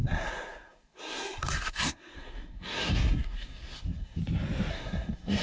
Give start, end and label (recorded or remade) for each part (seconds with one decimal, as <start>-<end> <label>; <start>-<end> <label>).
0.0-4.2 remade; 4.2-4.7 recorded; 4.7-5.4 remade